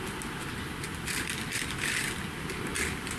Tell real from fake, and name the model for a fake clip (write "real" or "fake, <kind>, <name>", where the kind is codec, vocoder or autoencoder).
real